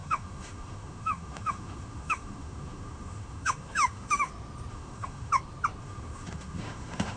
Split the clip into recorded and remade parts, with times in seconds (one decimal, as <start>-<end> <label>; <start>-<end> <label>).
0.0-4.3 remade; 4.3-4.7 recorded; 4.7-5.3 remade; 5.3-5.8 recorded; 5.8-7.2 remade